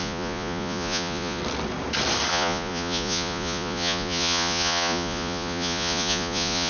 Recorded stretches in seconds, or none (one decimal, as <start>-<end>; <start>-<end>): 1.4-2.3

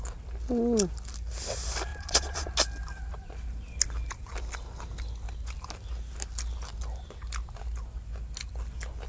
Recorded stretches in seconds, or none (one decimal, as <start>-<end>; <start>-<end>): 0.0-1.9; 2.5-9.1

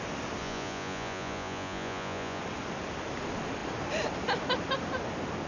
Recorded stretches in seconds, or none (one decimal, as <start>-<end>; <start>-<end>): 0.0-0.4; 2.4-5.5

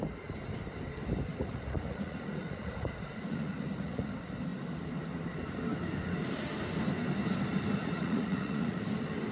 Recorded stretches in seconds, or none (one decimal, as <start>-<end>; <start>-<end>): 0.0-1.3; 4.1-7.8; 8.8-9.3

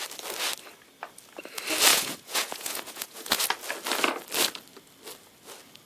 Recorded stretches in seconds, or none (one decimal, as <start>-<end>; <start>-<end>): 0.0-1.9; 3.4-5.9

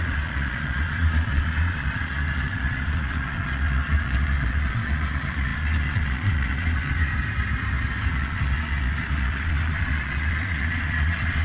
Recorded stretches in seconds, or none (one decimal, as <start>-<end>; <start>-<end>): 7.1-8.1